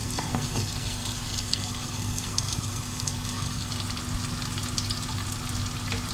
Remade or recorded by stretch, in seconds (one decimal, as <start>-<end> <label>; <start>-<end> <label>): 0.0-3.7 remade; 3.7-6.1 recorded